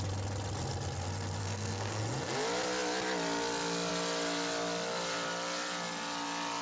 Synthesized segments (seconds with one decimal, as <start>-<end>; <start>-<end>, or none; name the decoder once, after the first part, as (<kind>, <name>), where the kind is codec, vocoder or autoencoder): 1.4-2.0 (codec, SNAC)